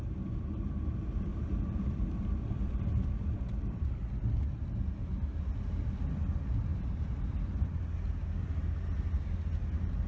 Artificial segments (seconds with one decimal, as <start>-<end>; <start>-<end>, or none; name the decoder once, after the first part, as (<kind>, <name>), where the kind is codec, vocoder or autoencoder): 1.3-3.8 (vocoder, BigVGAN v2); 6.7-7.8